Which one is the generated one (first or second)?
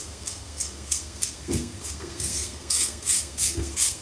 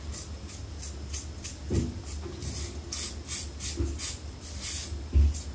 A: first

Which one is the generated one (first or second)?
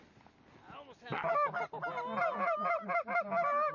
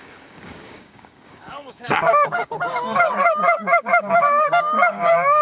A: second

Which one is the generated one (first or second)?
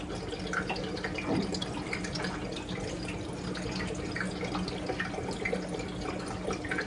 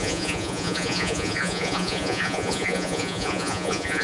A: second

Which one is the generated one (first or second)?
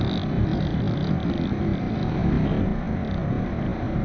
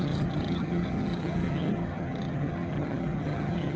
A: second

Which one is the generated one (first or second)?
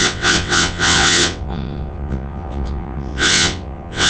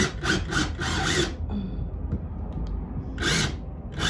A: first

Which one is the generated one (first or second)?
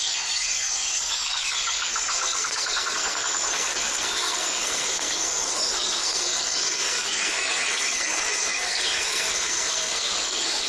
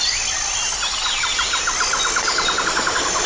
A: first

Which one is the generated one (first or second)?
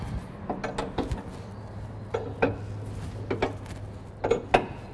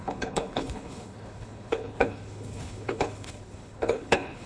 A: second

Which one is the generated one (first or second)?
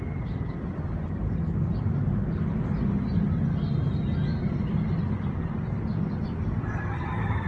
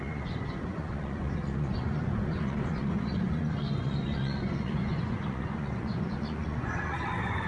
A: second